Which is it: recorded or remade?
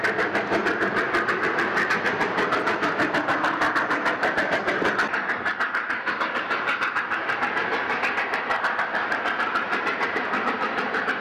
recorded